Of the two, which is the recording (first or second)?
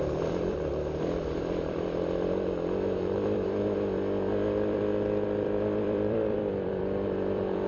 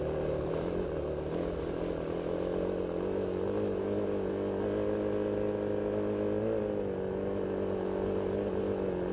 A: second